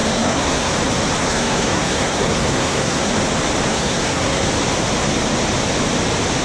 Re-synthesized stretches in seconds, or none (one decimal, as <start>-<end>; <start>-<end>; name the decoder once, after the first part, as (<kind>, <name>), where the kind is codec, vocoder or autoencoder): 0.0-0.7 (codec, SNAC); 1.2-3.1; 3.7-4.5